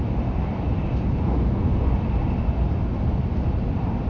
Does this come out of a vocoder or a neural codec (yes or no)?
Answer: no